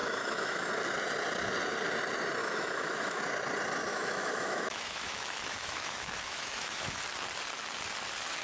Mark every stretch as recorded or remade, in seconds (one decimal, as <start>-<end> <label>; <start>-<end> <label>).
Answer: 0.0-0.7 remade; 0.7-2.4 recorded; 2.4-3.2 remade; 3.2-3.9 recorded; 3.9-7.0 remade; 7.0-8.4 recorded